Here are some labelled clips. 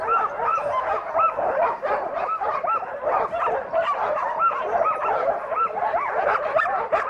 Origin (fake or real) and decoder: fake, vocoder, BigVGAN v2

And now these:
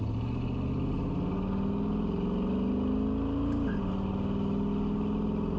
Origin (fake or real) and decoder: real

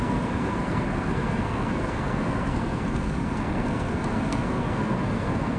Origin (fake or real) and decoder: fake, codec, SNAC